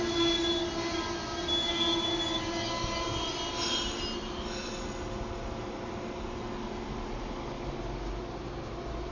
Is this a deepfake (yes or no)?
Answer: no